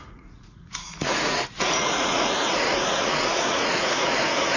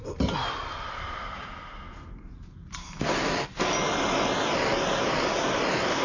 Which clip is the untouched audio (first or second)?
second